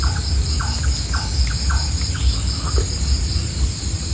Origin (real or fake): real